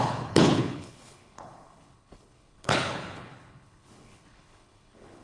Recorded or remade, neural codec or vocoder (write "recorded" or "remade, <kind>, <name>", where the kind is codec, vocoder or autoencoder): remade, codec, HILCodec